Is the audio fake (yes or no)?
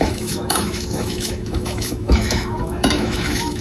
yes